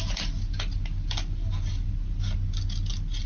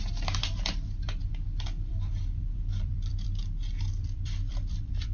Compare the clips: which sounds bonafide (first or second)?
first